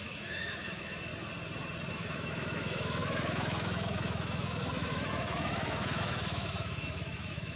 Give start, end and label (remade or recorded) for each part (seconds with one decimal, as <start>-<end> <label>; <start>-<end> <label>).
0.0-1.1 remade; 1.1-1.9 recorded; 1.9-7.6 remade